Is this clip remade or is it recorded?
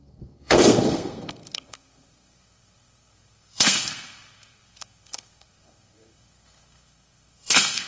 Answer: remade